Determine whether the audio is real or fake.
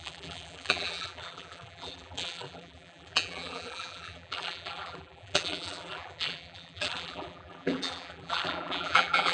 fake